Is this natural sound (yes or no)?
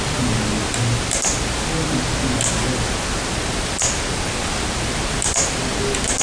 yes